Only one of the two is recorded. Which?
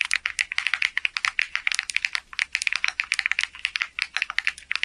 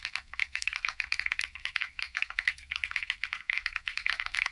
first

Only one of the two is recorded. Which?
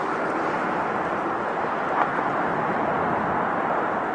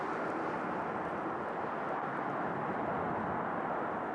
second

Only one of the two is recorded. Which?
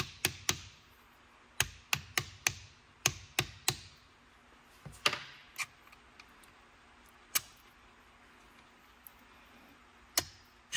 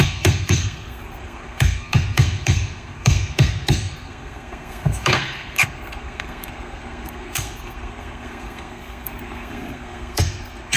first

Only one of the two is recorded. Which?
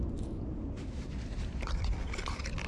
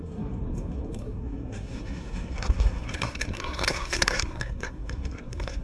first